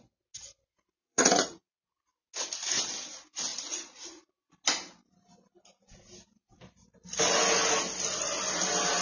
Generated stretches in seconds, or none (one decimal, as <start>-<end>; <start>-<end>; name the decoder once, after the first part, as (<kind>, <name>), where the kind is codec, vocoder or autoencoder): 1.0-1.7 (vocoder, Vocos); 3.5-4.3